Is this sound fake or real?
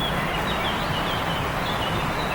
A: fake